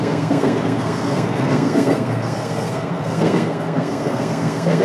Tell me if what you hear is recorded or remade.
remade